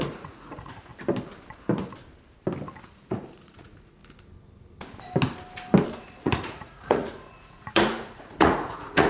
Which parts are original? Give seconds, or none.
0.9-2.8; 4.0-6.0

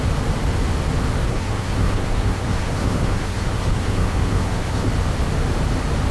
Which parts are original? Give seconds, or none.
0.0-1.2; 4.9-6.1

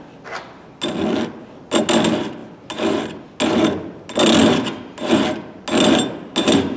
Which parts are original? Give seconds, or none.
0.0-6.8